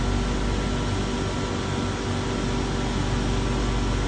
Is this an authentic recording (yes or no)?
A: yes